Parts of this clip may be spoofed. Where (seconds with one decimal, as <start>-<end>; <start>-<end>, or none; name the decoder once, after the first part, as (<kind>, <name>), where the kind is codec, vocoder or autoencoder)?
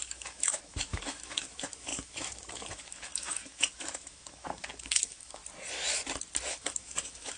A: 0.0-5.4 (autoencoder, DAC-VAE); 6.5-7.4